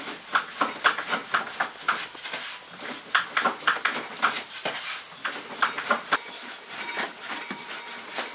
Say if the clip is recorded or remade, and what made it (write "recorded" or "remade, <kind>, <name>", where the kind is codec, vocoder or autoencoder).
recorded